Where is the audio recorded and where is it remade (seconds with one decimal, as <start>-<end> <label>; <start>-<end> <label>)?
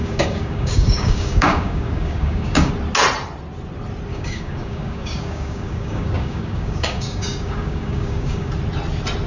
0.0-2.7 remade; 2.7-4.1 recorded; 4.1-8.5 remade; 8.5-9.3 recorded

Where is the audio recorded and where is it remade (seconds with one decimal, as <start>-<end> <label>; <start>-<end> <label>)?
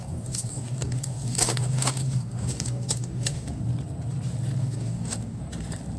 0.0-3.6 remade; 3.6-4.6 recorded; 4.6-5.4 remade; 5.4-6.0 recorded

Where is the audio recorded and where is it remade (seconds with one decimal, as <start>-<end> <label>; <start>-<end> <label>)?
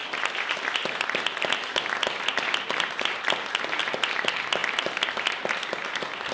0.0-6.3 recorded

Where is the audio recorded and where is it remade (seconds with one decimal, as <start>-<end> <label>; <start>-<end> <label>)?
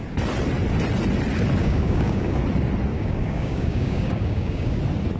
0.0-1.6 recorded; 1.6-2.4 remade; 2.4-2.9 recorded; 2.9-4.8 remade; 4.8-5.2 recorded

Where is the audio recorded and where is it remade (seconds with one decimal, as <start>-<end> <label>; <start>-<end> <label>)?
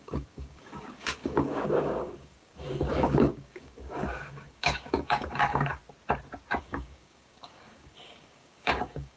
0.0-5.8 remade; 5.8-6.6 recorded; 6.6-9.2 remade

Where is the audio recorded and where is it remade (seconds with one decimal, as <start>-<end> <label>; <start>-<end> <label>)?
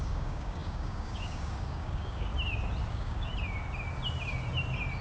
0.0-2.3 remade; 2.3-2.9 recorded; 2.9-3.3 remade; 3.3-5.0 recorded